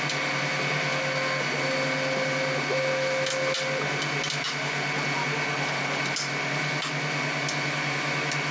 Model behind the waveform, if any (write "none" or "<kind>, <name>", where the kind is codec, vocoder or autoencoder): none